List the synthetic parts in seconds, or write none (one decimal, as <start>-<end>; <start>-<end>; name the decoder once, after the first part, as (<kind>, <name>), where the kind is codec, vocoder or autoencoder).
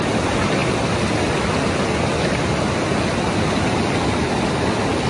none